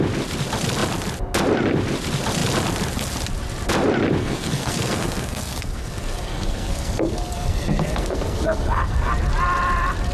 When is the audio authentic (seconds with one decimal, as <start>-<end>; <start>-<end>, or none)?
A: 0.0-4.2; 9.1-10.1